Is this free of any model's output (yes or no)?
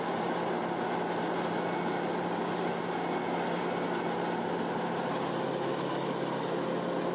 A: yes